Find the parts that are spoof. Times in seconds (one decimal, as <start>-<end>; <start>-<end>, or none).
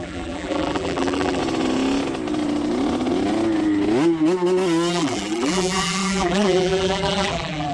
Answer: 0.0-1.4; 4.9-7.7